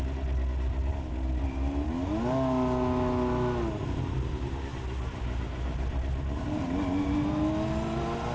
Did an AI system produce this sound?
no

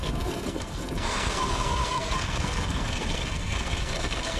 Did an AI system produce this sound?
yes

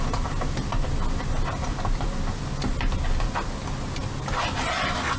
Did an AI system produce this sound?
no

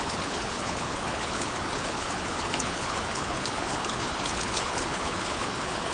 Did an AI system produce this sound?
yes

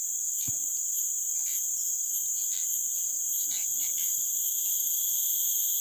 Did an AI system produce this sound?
yes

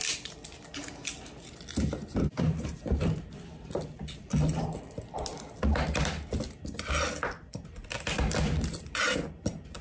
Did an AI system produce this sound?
no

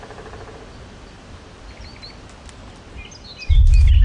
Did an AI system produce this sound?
no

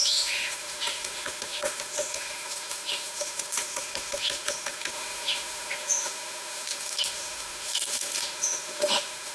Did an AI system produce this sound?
yes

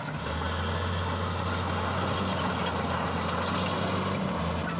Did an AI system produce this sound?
no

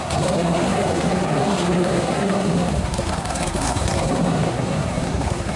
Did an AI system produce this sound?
yes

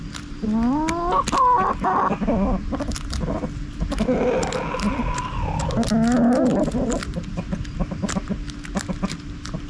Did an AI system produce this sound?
no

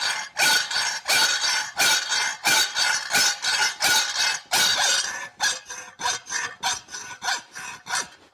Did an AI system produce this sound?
no